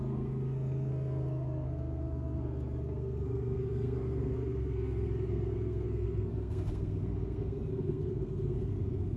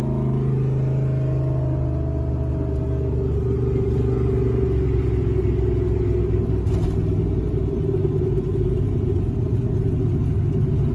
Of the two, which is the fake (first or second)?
first